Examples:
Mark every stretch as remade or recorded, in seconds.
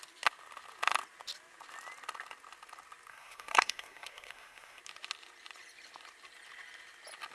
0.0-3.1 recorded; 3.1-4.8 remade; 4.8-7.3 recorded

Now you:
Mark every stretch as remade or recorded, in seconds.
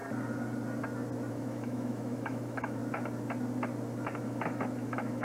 0.0-1.3 recorded; 1.3-2.8 remade; 2.8-4.2 recorded; 4.2-5.2 remade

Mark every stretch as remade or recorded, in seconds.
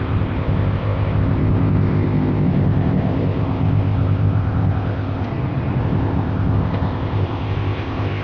0.0-5.3 remade; 5.3-5.8 recorded; 5.8-8.2 remade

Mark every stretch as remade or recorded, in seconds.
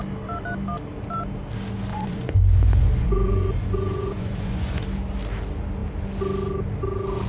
0.0-1.9 recorded; 1.9-4.8 remade; 4.8-7.3 recorded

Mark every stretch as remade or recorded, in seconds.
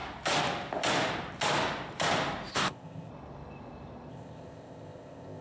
0.0-2.5 recorded; 2.5-3.1 remade; 3.1-4.1 recorded; 4.1-5.4 remade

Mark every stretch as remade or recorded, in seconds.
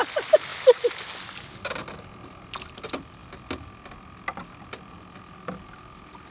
0.0-6.3 recorded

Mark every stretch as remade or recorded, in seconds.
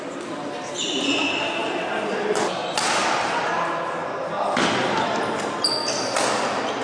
0.0-6.8 recorded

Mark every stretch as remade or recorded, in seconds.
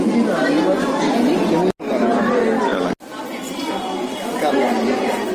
0.0-5.3 recorded